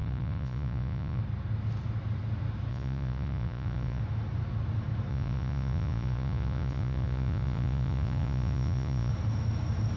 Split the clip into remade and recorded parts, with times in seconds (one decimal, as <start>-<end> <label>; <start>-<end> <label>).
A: 0.0-1.2 remade; 1.2-2.7 recorded; 2.7-4.0 remade; 4.0-5.1 recorded; 5.1-9.1 remade; 9.1-10.0 recorded